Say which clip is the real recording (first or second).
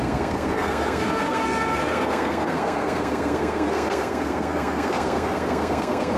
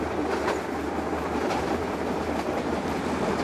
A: second